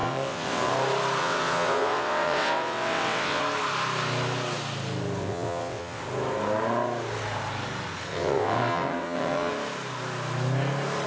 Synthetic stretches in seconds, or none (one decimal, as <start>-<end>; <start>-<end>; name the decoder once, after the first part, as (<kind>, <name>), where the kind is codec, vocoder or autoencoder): 0.0-0.7 (vocoder, WaveNeXt); 1.2-3.4; 5.2-6.0; 8.1-9.5